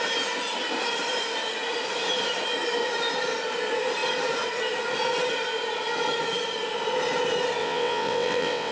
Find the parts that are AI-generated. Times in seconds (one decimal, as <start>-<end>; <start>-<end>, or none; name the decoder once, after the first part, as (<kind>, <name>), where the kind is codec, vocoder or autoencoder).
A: 7.6-8.7 (vocoder, WaveNeXt)